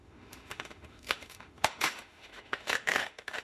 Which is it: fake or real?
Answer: fake